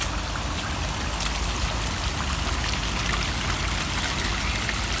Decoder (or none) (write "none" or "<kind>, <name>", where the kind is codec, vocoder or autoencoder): none